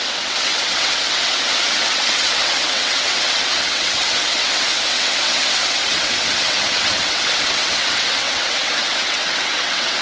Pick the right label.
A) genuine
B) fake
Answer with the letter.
B